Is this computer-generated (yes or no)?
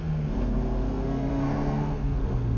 yes